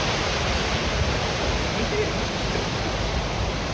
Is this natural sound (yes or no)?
yes